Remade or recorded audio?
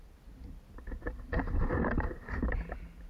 recorded